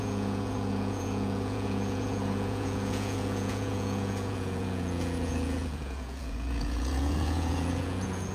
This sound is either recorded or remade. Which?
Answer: remade